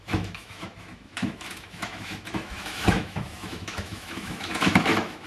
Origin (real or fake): fake